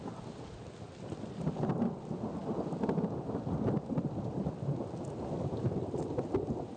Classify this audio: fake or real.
real